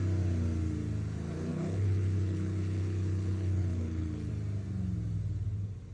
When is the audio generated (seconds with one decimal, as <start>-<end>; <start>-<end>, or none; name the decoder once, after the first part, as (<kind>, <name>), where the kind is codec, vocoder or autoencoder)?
1.5-4.3 (codec, HILCodec)